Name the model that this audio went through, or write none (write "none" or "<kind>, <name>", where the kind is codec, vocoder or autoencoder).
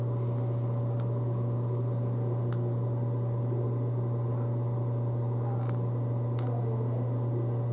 none